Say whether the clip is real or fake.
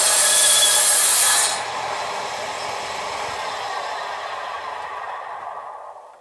fake